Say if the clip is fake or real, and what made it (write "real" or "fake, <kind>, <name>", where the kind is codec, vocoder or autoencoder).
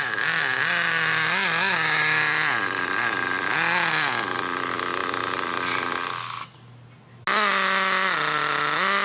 real